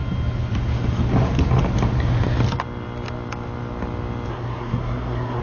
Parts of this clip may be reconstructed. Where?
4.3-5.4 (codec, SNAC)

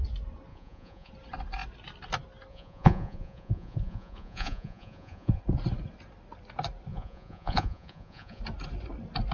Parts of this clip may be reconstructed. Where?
0.5-1.1 (vocoder, Vocos); 2.5-5.4; 6.9-8.4

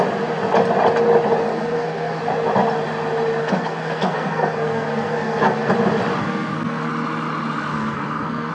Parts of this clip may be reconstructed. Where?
1.4-2.2 (codec, SNAC); 3.4-5.7; 6.2-6.9; 7.7-8.5

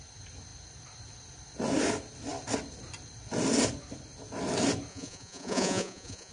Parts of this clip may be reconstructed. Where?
4.9-6.3 (vocoder, Vocos)

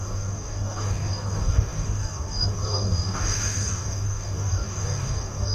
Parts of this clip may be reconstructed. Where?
0.0-5.5 (codec, DAC)

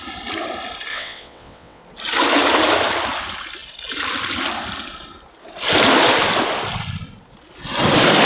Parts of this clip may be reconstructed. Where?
0.9-1.8 (vocoder, WaveNeXt)

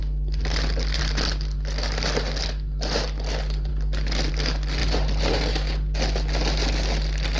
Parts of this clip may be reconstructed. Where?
none

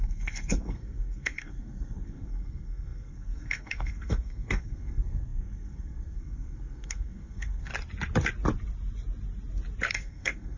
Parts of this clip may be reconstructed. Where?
0.0-7.7 (codec, SNAC); 9.9-10.6